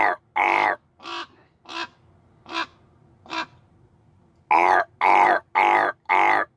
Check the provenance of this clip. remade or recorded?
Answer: recorded